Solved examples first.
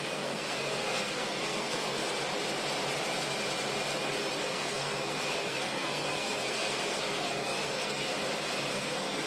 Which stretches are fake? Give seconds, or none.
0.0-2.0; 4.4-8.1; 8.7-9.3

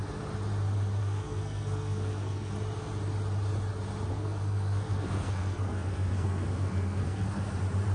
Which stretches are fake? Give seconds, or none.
1.0-2.5; 4.1-7.4

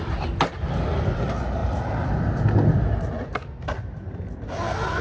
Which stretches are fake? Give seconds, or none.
none

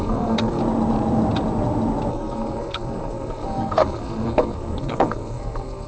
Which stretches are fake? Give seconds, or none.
0.0-0.6; 2.1-5.9

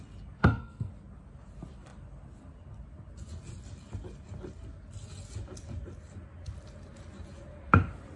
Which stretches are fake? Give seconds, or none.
0.4-0.9

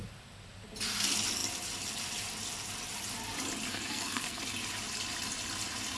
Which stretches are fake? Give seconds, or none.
3.7-4.4

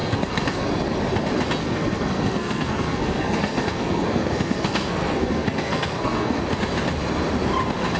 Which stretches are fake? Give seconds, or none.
0.0-0.7; 1.6-6.4